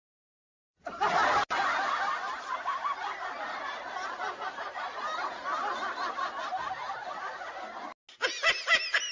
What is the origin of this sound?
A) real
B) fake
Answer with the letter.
A